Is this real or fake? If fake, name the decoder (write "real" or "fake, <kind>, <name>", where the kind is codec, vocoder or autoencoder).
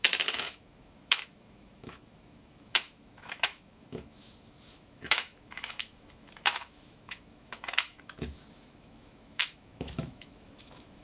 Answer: fake, autoencoder, DAC-VAE